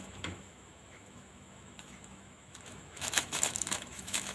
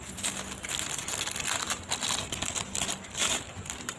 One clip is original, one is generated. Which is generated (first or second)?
first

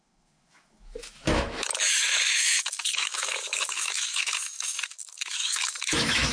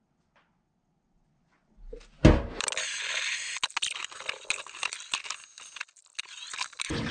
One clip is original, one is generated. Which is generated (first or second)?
first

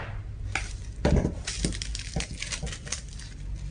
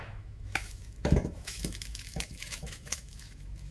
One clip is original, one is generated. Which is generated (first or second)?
second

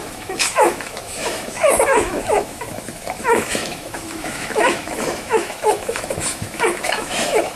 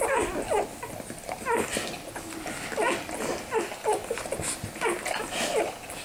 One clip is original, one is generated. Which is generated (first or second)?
first